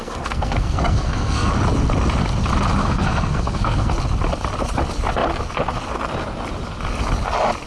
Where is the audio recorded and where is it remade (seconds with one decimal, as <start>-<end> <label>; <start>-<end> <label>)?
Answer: 0.0-1.5 remade; 1.5-2.8 recorded; 2.8-3.9 remade; 3.9-7.7 recorded